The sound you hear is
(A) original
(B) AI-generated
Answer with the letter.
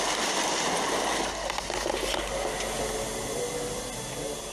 A